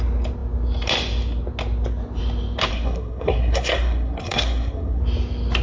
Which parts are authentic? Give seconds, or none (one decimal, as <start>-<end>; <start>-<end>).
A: 0.0-2.7; 5.0-5.6